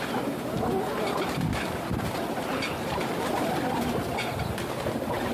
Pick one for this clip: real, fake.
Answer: real